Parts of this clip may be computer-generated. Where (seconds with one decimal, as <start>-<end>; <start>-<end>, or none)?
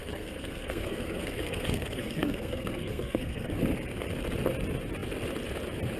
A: 0.0-3.6